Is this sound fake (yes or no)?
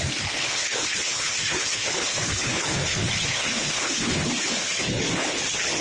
yes